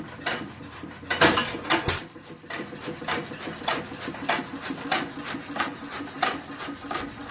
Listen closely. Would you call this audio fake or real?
fake